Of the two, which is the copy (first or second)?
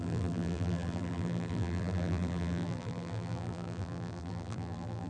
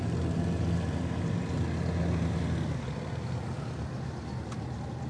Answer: first